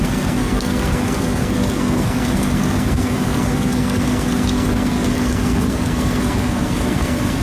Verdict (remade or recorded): remade